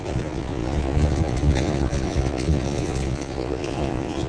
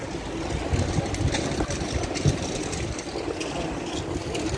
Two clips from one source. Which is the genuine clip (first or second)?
second